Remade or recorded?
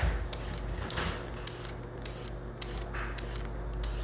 recorded